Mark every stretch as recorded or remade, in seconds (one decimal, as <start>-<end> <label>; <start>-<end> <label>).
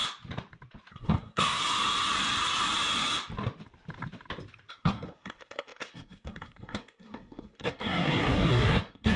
0.0-0.9 recorded; 0.9-1.6 remade; 1.6-4.7 recorded; 4.7-9.2 remade